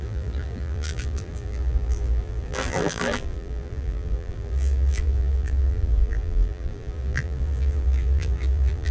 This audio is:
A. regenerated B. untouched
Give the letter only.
A